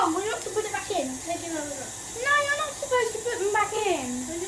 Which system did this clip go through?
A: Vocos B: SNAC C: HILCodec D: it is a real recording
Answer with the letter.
D